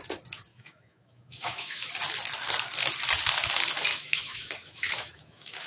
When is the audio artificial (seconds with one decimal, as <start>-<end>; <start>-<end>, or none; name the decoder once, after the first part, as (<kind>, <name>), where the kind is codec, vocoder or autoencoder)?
0.5-1.9 (autoencoder, DAC-VAE); 3.9-5.7